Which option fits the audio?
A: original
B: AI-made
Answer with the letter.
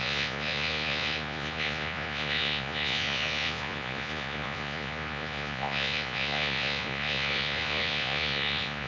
B